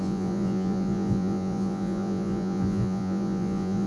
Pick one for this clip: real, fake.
fake